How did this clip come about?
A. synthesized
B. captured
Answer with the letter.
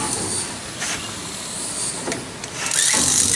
B